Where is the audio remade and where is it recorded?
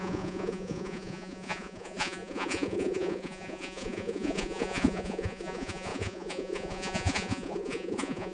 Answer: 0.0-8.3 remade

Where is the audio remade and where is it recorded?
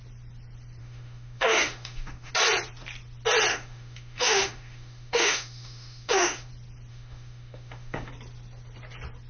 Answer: 0.0-0.8 recorded; 0.8-2.3 remade; 2.3-3.5 recorded; 3.5-6.5 remade; 6.5-6.9 recorded; 6.9-8.1 remade; 8.1-9.3 recorded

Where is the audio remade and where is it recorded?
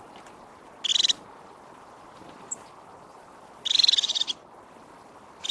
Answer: 0.0-5.5 recorded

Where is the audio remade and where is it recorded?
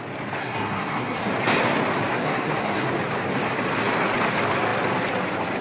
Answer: 0.0-0.4 recorded; 0.4-1.3 remade; 1.3-2.1 recorded; 2.1-2.9 remade; 2.9-5.6 recorded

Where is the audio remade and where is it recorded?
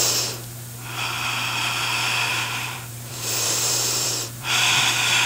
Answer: 0.0-2.3 recorded; 2.3-4.6 remade; 4.6-5.3 recorded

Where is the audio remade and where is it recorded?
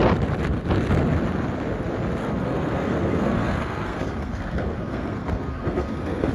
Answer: 0.0-2.2 recorded; 2.2-6.3 remade